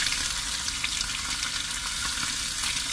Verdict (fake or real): real